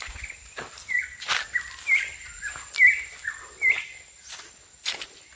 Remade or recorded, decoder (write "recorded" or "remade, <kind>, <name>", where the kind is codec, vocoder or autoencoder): recorded